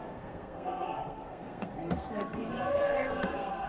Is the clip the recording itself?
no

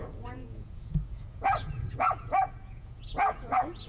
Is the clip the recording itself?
no